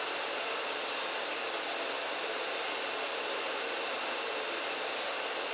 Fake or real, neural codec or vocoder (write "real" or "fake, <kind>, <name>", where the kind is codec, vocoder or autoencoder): real